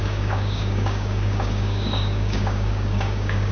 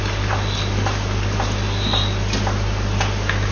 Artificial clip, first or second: first